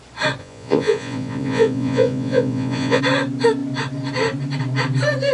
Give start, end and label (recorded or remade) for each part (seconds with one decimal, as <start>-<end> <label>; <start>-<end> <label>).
0.0-0.4 recorded; 0.4-3.0 remade; 3.0-5.3 recorded